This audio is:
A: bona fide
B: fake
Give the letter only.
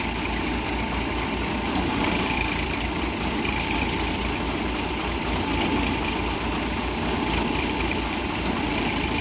B